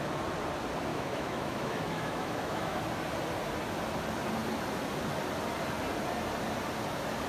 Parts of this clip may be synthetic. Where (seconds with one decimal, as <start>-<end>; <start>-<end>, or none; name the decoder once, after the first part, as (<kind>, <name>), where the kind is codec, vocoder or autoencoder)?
0.9-2.8 (autoencoder, DAC-VAE)